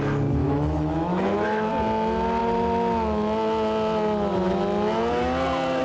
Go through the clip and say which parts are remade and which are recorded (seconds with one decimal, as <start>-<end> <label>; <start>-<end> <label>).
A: 0.0-0.4 recorded; 0.4-1.7 remade; 1.7-5.8 recorded